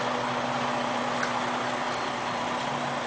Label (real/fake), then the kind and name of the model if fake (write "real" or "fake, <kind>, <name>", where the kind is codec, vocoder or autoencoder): real